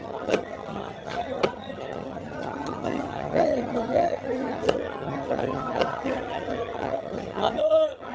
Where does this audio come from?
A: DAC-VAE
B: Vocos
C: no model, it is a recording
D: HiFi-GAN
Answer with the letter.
D